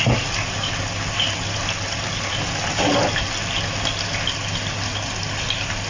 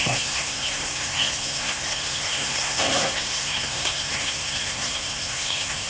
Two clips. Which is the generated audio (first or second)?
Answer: second